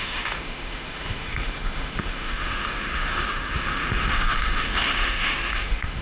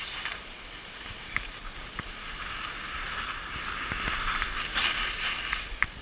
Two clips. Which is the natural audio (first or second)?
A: second